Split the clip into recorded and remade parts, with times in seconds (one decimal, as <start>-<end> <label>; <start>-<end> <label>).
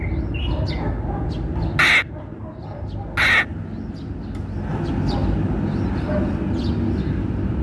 0.0-7.6 recorded